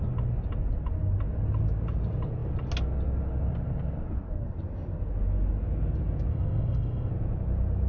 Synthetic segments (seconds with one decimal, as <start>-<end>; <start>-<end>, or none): 6.3-7.1